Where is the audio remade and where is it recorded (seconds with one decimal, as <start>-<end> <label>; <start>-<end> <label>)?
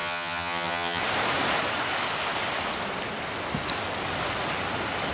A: 0.0-1.0 remade; 1.0-5.1 recorded